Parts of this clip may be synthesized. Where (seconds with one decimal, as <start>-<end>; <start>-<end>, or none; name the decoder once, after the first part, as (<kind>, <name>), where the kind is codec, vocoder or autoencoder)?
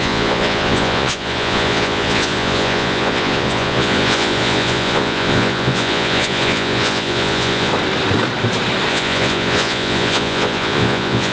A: 0.0-7.7 (vocoder, Vocos); 8.9-11.3